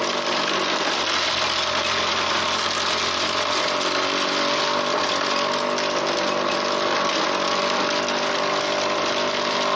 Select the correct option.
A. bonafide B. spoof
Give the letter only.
A